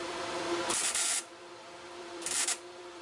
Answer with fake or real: fake